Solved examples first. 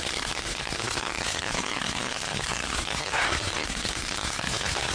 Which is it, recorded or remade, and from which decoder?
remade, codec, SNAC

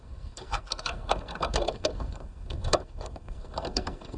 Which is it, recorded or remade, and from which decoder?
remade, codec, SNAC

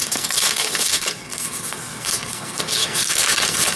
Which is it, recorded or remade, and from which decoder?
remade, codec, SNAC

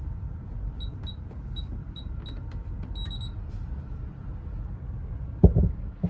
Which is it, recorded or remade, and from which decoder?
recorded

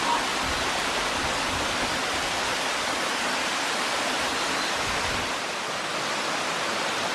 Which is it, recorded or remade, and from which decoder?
recorded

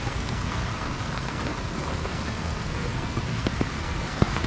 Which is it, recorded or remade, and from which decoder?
remade, codec, SNAC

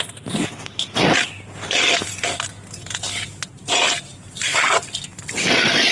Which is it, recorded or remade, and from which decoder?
recorded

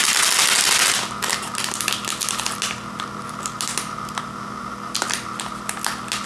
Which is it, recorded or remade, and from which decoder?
recorded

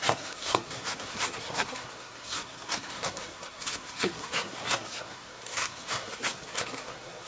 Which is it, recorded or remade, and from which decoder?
remade, codec, SNAC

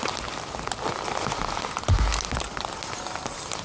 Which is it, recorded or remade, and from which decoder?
recorded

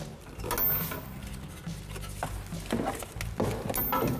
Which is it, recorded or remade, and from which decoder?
recorded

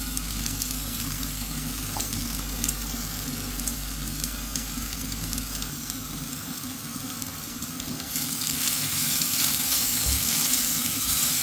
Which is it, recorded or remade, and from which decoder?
remade, codec, SNAC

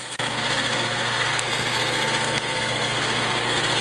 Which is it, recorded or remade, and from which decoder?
remade, codec, SNAC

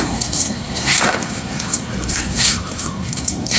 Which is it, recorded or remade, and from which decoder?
remade, codec, SNAC